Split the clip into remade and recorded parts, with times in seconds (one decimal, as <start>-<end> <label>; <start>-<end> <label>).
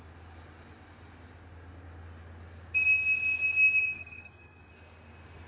0.0-4.0 recorded; 4.0-4.7 remade; 4.7-5.5 recorded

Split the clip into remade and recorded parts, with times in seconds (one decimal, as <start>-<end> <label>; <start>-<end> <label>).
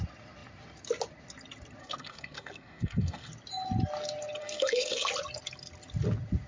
0.0-1.8 recorded; 1.8-3.3 remade; 3.3-4.4 recorded; 4.4-5.1 remade; 5.1-6.5 recorded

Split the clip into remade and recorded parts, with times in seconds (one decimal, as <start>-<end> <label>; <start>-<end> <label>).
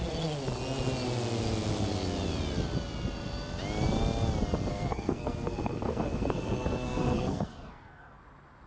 0.0-4.7 recorded; 4.7-8.2 remade; 8.2-8.7 recorded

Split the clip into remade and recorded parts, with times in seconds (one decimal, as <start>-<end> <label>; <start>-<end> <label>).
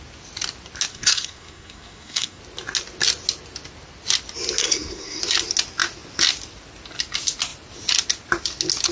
0.0-0.9 recorded; 0.9-2.4 remade; 2.4-4.6 recorded; 4.6-5.2 remade; 5.2-8.9 recorded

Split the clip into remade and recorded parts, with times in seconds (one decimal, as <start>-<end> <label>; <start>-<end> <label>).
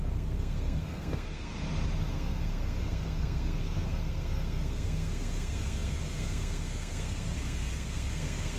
0.0-1.5 remade; 1.5-2.1 recorded; 2.1-8.6 remade